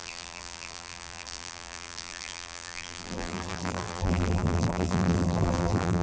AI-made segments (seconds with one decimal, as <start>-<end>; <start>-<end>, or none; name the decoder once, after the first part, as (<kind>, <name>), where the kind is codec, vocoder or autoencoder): 0.0-6.0 (vocoder, BigVGAN v2)